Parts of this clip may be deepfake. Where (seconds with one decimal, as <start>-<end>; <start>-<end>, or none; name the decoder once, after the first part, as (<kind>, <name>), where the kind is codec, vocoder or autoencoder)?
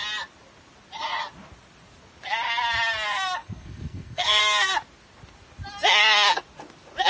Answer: 3.4-4.4 (codec, SNAC)